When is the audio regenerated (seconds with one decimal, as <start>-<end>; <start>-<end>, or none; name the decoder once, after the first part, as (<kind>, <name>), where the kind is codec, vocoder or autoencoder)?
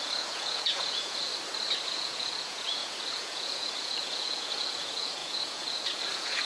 0.0-1.3 (vocoder, Vocos); 1.9-6.5